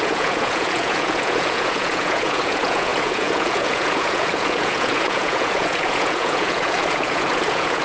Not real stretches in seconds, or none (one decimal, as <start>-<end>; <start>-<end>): 0.0-7.8